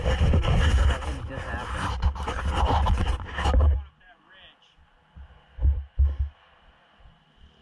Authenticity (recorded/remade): recorded